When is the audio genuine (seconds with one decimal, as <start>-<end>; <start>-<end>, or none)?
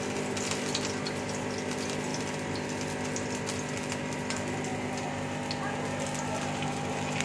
0.0-2.1; 4.0-7.2